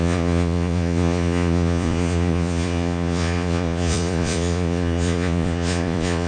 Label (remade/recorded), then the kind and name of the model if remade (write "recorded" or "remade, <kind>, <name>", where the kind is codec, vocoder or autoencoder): remade, vocoder, Vocos